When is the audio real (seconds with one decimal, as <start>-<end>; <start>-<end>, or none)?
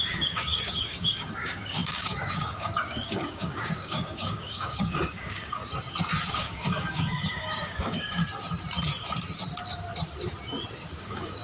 5.6-6.3; 8.2-11.0